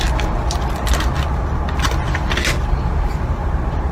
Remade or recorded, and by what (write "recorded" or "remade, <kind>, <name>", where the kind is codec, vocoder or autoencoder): recorded